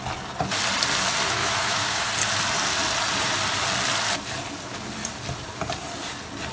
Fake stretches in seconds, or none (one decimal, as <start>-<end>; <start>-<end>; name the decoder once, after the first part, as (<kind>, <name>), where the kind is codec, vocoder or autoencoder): 1.4-2.1 (autoencoder, DAC-VAE)